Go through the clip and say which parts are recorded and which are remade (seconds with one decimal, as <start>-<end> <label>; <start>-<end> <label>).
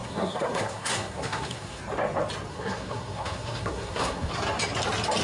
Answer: 0.0-1.8 remade; 1.8-2.5 recorded; 2.5-4.3 remade; 4.3-5.2 recorded